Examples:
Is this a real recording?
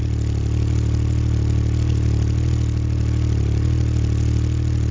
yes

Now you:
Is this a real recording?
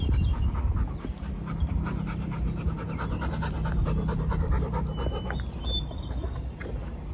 yes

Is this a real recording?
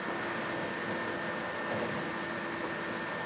yes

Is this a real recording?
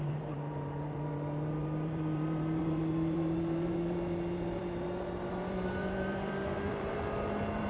no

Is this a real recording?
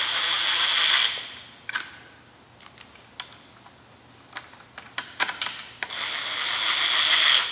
yes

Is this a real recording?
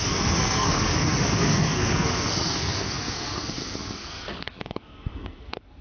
no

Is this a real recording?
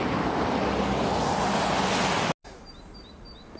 yes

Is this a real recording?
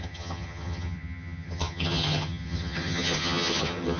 no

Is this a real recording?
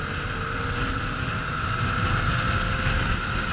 yes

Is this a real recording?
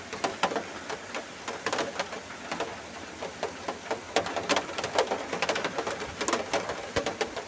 yes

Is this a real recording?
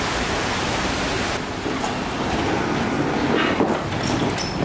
yes